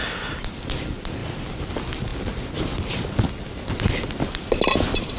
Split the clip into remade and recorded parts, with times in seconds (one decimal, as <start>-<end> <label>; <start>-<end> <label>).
0.0-1.2 recorded; 1.2-1.7 remade; 1.7-5.2 recorded